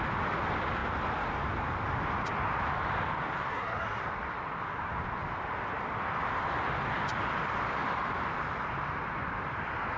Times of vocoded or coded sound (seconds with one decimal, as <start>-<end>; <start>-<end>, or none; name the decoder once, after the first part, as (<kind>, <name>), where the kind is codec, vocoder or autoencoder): 3.5-4.0 (codec, SNAC)